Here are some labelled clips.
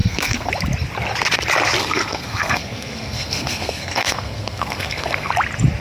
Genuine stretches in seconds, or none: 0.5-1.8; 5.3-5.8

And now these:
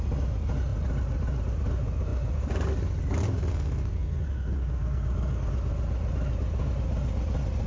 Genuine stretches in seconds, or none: 0.0-3.5; 5.5-7.7